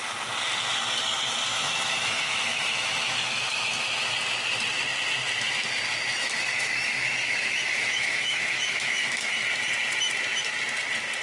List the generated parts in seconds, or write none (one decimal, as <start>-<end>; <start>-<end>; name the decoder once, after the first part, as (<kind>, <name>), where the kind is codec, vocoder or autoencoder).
1.5-4.1 (autoencoder, DAC-VAE); 6.2-9.3